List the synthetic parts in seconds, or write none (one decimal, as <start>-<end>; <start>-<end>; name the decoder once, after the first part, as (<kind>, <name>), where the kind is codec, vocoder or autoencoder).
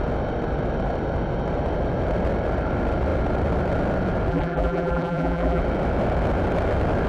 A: 4.3-5.6 (vocoder, BigVGAN v2)